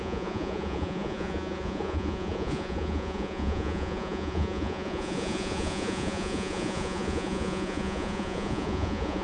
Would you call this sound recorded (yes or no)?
no